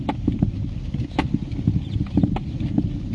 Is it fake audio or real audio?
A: real